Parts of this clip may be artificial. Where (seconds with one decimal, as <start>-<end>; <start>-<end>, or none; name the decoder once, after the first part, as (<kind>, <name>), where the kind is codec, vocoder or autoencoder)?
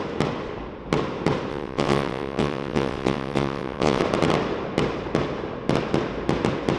1.5-4.0 (vocoder, WaveNeXt)